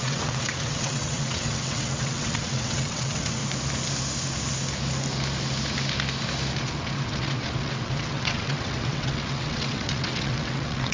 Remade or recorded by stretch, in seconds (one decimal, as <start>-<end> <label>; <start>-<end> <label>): 0.0-3.4 remade; 3.4-6.6 recorded; 6.6-10.9 remade